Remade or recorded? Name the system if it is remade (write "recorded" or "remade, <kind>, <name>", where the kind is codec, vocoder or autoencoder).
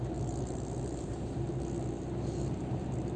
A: recorded